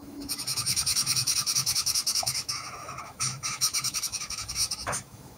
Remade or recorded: remade